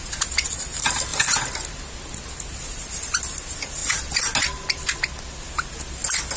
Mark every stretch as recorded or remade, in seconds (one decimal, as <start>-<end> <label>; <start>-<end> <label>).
0.0-6.4 recorded